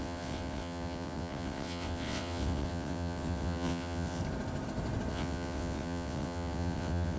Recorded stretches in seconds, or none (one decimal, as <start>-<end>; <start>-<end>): 4.2-5.1